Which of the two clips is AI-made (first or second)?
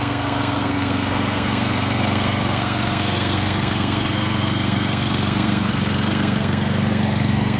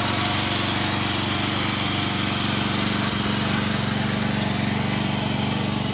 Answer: first